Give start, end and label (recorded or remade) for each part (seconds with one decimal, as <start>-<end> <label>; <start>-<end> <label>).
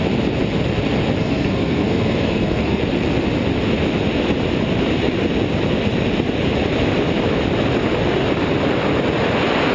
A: 0.0-1.2 recorded; 1.2-2.8 remade; 2.8-9.7 recorded